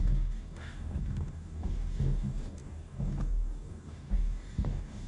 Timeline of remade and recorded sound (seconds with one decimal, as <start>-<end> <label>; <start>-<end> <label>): 0.0-5.1 remade